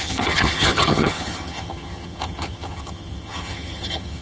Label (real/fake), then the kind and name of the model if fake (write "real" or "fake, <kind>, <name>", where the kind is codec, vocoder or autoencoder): fake, vocoder, HiFi-GAN